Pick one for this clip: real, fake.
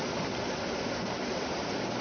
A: real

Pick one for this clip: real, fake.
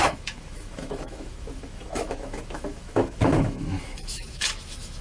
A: fake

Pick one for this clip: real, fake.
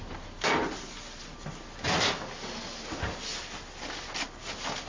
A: real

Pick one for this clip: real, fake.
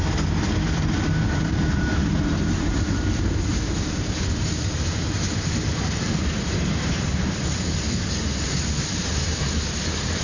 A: fake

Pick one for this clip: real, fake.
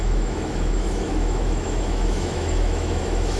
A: fake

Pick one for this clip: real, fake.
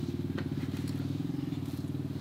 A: real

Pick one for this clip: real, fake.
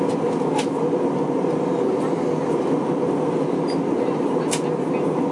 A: real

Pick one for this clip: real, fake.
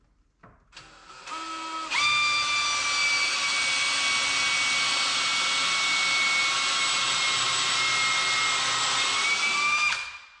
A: real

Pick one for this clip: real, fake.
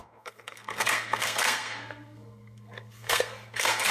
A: fake